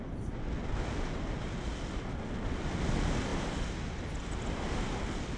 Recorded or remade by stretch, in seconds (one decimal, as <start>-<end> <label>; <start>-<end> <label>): 0.0-5.4 recorded